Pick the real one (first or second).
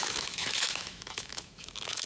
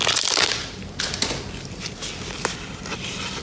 second